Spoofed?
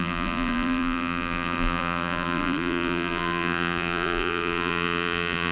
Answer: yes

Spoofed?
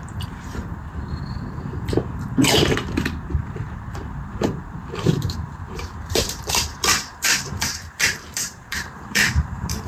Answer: yes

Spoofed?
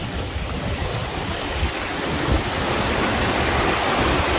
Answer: no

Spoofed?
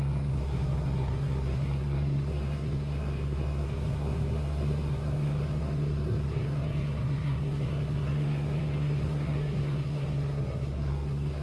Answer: yes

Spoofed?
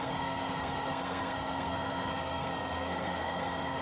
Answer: yes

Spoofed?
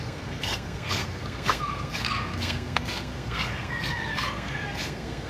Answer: yes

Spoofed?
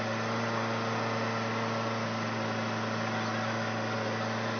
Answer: no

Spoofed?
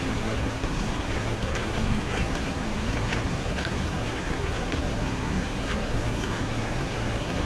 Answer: yes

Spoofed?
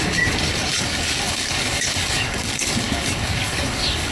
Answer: yes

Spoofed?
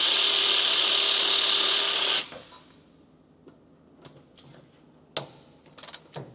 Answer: no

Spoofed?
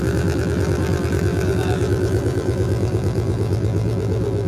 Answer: yes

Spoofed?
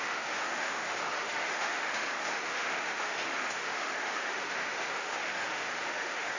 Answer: yes